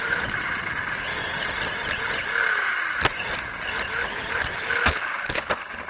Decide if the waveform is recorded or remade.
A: recorded